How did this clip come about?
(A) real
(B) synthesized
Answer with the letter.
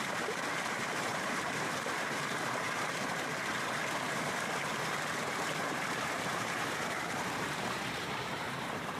B